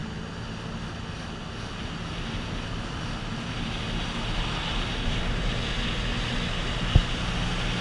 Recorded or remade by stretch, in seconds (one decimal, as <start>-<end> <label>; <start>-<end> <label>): 0.0-7.8 recorded